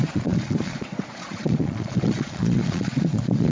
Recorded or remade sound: remade